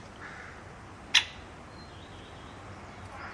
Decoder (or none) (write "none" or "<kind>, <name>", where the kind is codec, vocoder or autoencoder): none